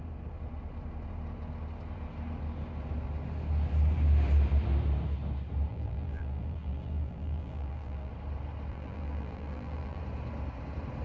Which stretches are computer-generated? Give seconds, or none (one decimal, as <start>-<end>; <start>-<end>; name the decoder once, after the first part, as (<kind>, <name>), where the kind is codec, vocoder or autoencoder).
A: 5.7-8.1 (vocoder, BigVGAN v2); 8.7-10.0